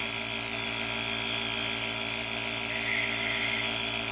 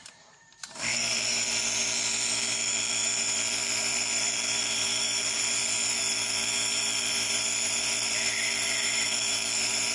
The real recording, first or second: first